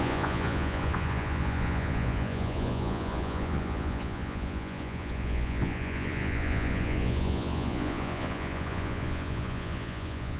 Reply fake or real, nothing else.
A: fake